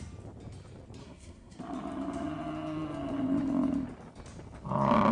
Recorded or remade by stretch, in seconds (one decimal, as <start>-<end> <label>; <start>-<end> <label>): 0.0-1.0 recorded; 1.0-1.6 remade; 1.6-5.1 recorded